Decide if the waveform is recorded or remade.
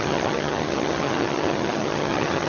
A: remade